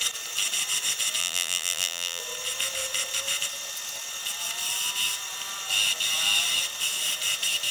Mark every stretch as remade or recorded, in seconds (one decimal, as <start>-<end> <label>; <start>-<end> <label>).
0.0-1.2 recorded; 1.2-2.2 remade; 2.2-7.7 recorded